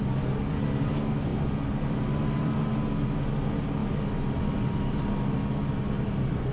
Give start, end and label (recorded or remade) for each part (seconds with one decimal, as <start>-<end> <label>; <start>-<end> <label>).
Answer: 0.0-6.5 recorded